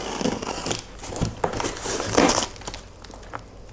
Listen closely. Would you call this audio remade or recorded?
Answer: recorded